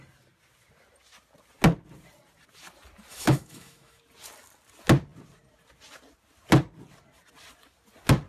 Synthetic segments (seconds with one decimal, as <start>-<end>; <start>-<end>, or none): 3.1-4.0